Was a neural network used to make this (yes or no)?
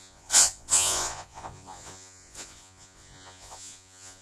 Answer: yes